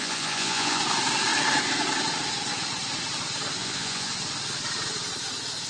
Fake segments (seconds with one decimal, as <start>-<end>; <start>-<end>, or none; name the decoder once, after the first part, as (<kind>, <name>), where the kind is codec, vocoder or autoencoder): 0.0-0.8 (vocoder, Vocos); 3.6-4.1